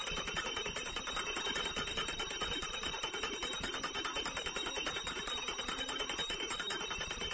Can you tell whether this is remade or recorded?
recorded